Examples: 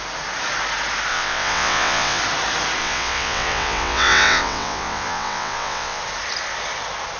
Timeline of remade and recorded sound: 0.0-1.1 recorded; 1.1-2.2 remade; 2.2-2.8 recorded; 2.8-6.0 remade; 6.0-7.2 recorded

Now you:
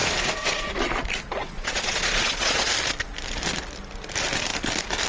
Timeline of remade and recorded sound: 0.0-0.7 remade; 0.7-1.4 recorded; 1.4-2.7 remade; 2.7-5.1 recorded

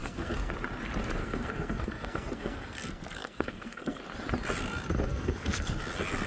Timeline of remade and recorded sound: 0.0-0.5 remade; 0.5-1.2 recorded; 1.2-4.0 remade; 4.0-5.1 recorded; 5.1-5.8 remade; 5.8-6.3 recorded

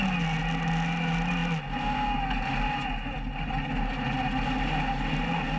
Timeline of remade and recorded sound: 0.0-5.6 recorded

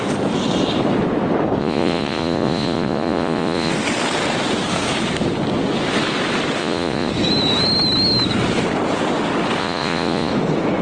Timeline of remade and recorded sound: 0.0-1.6 recorded; 1.6-3.7 remade; 3.7-6.6 recorded; 6.6-7.1 remade; 7.1-9.6 recorded; 9.6-10.3 remade; 10.3-10.8 recorded